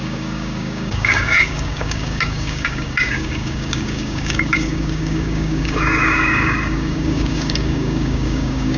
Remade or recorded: remade